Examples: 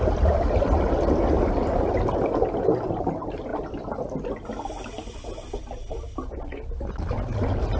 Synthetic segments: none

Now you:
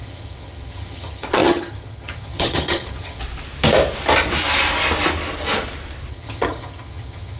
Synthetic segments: 0.0-3.2 (vocoder, HiFi-GAN); 6.1-7.4

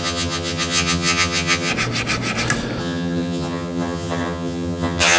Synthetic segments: 0.0-1.7 (vocoder, HiFi-GAN); 2.8-5.2

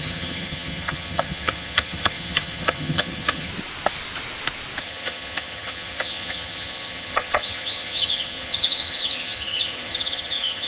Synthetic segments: 0.0-3.5 (vocoder, HiFi-GAN); 4.8-10.7